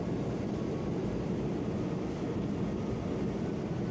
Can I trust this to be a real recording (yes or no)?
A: yes